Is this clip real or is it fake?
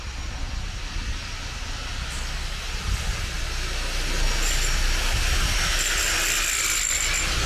real